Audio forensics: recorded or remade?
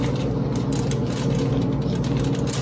recorded